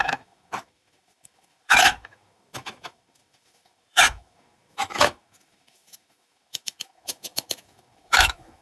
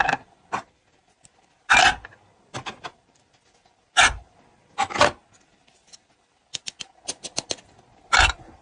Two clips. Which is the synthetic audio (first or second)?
first